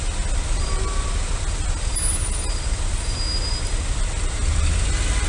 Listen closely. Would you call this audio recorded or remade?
recorded